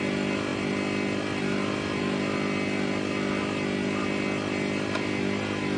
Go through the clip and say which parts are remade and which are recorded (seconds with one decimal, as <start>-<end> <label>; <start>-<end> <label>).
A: 0.0-5.8 recorded